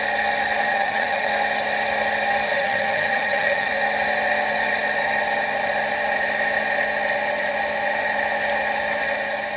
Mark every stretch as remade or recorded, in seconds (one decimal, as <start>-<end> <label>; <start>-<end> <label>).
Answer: 0.0-0.7 recorded; 0.7-1.3 remade; 1.3-2.5 recorded; 2.5-3.7 remade; 3.7-9.6 recorded